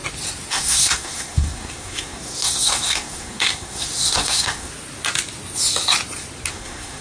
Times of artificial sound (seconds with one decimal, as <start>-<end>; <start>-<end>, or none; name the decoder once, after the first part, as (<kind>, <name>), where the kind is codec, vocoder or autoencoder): 0.5-4.7 (codec, SNAC); 6.5-7.0